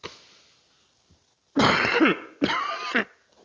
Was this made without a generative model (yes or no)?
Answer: yes